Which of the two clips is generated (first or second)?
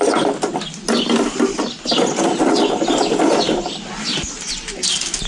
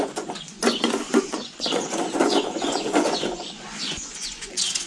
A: second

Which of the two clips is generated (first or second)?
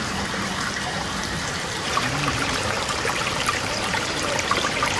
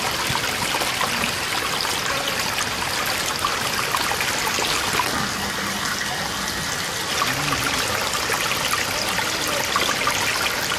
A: first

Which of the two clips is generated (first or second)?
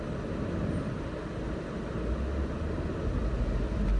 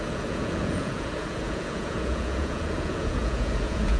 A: second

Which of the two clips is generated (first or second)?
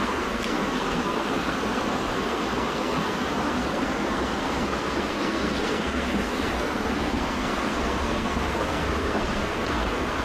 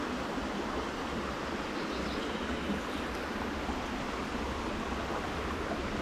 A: first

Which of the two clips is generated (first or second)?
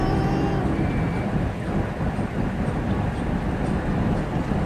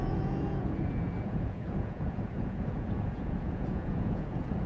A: second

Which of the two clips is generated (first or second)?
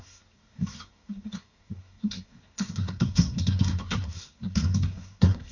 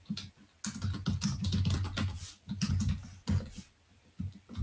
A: first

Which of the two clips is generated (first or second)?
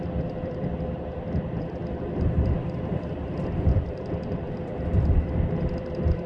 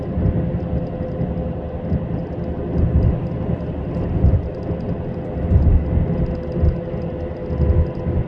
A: first